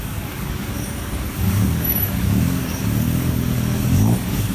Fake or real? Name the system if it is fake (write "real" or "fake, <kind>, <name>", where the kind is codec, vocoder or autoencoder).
fake, codec, DAC